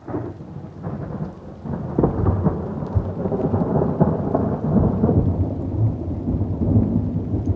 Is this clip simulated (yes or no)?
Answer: no